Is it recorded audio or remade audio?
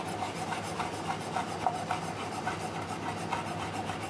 recorded